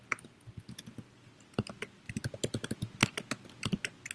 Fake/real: real